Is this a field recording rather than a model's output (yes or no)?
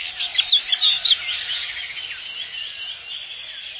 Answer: yes